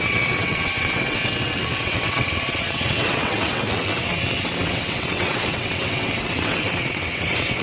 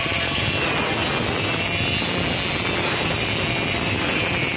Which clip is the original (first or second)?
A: second